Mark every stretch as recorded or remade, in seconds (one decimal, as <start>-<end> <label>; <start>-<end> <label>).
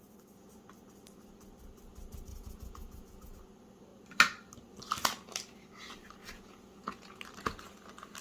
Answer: 0.0-2.3 recorded; 2.3-3.4 remade; 3.4-6.2 recorded; 6.2-7.2 remade; 7.2-8.2 recorded